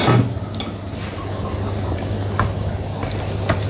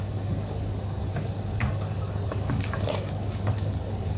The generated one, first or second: second